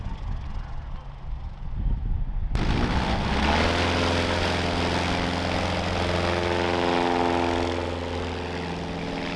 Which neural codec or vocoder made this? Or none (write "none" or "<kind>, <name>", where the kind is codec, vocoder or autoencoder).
none